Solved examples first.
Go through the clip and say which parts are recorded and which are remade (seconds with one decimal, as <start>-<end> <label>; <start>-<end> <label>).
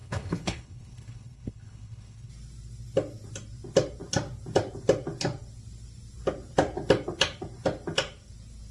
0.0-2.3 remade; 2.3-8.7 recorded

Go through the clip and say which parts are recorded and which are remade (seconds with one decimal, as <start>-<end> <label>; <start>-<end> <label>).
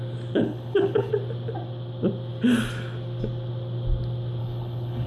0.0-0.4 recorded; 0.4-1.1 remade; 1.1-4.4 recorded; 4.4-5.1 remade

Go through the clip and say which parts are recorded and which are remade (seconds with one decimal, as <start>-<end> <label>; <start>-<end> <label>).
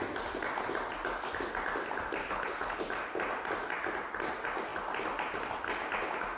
0.0-2.2 recorded; 2.2-2.8 remade; 2.8-6.4 recorded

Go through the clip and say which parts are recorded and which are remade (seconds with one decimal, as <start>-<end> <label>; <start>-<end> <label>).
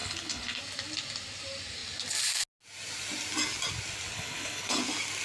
0.0-0.6 remade; 0.6-4.1 recorded; 4.1-4.8 remade; 4.8-5.2 recorded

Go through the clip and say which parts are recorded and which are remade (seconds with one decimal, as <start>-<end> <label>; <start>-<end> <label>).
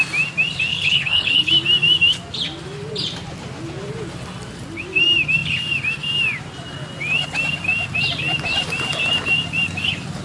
0.0-0.7 recorded; 0.7-1.5 remade; 1.5-10.2 recorded